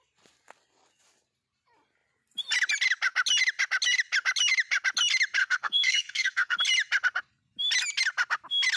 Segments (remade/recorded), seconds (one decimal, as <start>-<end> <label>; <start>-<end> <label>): 0.0-5.4 recorded; 5.4-6.6 remade; 6.6-8.8 recorded

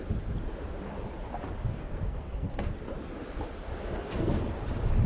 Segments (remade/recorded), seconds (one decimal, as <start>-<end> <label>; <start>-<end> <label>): 0.0-1.7 recorded; 1.7-2.7 remade; 2.7-3.8 recorded; 3.8-4.4 remade; 4.4-5.1 recorded

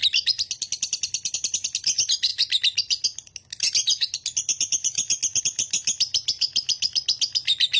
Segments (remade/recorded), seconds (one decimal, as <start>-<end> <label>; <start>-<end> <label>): 0.0-7.8 recorded

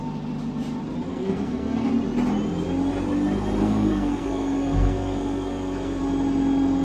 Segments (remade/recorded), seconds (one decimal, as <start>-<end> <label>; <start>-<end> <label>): 0.0-1.1 recorded; 1.1-1.9 remade; 1.9-3.6 recorded; 3.6-6.0 remade; 6.0-6.8 recorded